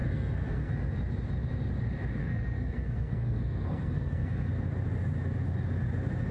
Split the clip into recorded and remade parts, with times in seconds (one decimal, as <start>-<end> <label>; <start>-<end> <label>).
0.0-0.7 remade; 0.7-2.2 recorded; 2.2-4.5 remade; 4.5-6.3 recorded